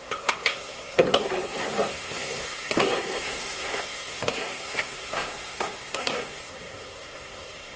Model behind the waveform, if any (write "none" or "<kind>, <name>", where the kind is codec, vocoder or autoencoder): codec, SNAC